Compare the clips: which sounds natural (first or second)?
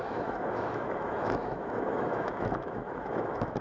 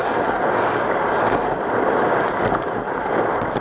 second